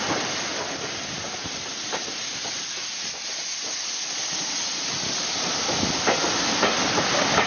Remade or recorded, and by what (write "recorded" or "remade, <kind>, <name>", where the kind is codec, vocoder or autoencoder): recorded